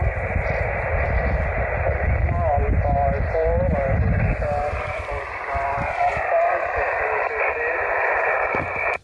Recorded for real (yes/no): yes